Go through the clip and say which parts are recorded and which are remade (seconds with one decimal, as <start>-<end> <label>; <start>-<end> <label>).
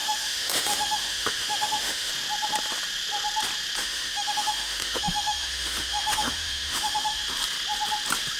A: 0.0-2.1 remade; 2.1-3.8 recorded; 3.8-7.2 remade; 7.2-8.4 recorded